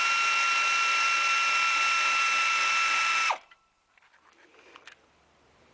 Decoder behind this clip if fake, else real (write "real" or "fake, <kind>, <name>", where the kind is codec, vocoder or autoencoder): real